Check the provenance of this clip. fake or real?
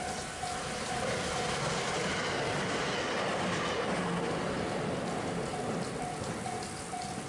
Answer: real